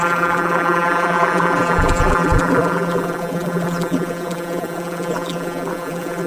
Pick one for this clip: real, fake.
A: fake